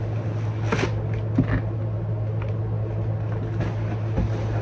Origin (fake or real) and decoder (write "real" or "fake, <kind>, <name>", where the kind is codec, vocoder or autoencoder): real